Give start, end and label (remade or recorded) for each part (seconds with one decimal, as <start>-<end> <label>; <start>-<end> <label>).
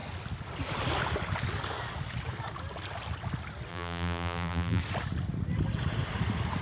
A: 0.0-3.7 recorded; 3.7-4.8 remade; 4.8-6.6 recorded